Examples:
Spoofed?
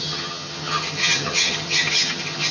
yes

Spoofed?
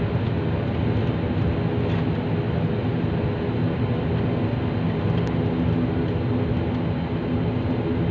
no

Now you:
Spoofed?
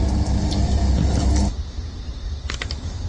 no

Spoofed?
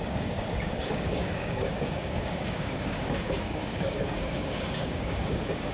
yes